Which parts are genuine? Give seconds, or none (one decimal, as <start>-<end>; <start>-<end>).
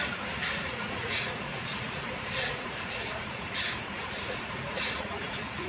none